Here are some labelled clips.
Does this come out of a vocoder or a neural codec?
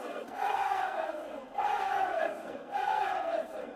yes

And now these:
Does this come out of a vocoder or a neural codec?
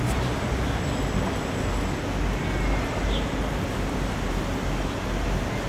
no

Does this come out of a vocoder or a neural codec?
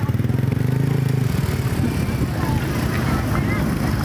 no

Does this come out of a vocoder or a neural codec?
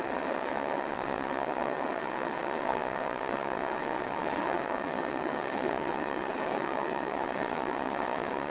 yes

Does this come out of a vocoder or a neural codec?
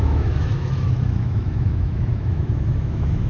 yes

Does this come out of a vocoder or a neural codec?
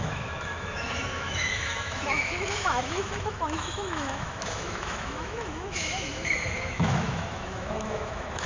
yes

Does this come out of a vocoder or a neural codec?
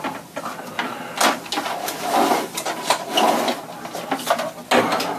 no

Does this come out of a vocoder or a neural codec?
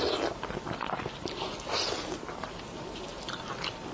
no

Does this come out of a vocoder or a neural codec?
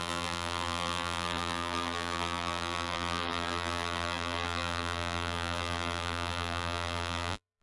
yes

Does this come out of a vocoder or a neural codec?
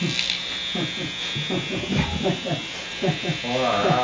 no